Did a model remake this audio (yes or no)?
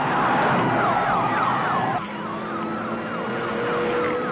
no